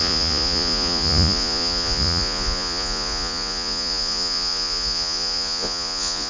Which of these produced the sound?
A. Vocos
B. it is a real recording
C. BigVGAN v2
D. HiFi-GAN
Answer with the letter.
A